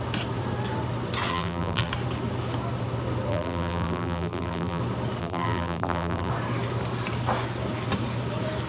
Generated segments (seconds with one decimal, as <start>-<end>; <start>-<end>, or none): 1.3-1.9; 3.3-4.8; 5.2-6.3